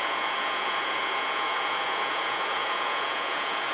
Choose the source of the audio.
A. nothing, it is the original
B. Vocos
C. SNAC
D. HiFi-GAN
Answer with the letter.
B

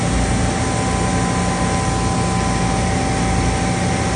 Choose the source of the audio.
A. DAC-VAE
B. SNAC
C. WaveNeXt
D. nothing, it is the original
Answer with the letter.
D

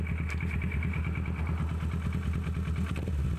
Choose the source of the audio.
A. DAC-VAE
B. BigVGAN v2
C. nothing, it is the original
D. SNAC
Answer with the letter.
C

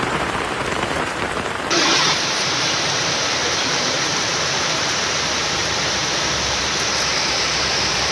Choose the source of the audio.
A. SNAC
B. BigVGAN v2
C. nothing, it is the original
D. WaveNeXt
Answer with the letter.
B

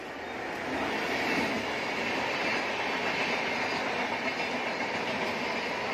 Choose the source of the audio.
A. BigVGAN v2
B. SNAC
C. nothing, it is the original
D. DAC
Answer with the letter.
C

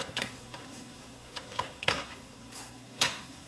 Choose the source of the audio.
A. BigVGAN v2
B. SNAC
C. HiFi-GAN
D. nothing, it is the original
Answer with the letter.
B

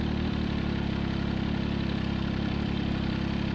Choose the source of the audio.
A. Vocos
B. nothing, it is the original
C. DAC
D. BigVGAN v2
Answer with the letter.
B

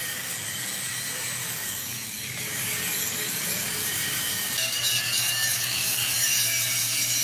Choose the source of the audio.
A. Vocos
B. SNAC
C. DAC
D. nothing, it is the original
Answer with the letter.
C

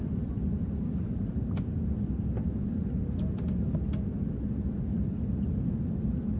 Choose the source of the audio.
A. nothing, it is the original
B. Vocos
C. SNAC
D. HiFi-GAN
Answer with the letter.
A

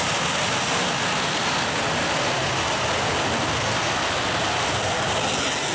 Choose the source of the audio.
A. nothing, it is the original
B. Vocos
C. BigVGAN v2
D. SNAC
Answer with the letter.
A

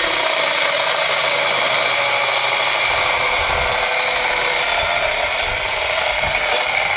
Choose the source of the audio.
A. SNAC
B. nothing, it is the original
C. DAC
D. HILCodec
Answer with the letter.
B